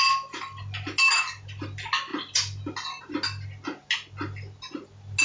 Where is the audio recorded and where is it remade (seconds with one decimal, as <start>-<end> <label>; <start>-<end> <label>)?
0.0-5.2 recorded